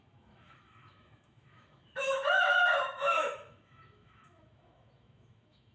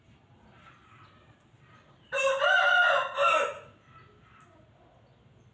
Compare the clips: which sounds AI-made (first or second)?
first